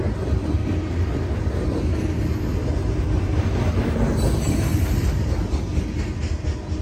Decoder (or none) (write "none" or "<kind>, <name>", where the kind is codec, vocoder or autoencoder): none